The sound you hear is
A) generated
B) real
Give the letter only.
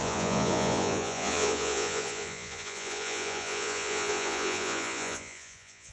A